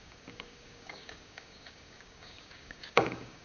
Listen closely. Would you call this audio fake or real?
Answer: fake